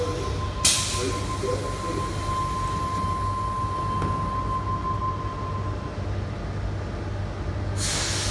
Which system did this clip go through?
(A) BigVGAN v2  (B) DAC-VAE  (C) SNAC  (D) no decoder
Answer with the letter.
D